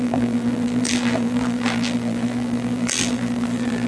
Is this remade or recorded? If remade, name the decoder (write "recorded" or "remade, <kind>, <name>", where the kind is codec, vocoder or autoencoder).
remade, vocoder, BigVGAN v2